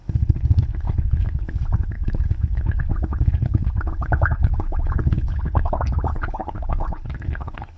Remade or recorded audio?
remade